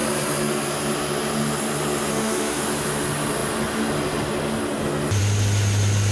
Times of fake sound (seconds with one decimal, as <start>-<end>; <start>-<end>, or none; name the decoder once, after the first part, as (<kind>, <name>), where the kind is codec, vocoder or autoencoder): 2.1-2.6 (autoencoder, DAC-VAE)